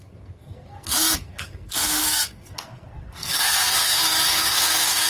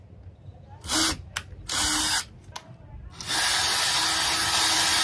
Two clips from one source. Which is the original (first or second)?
second